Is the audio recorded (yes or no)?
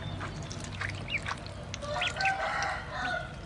yes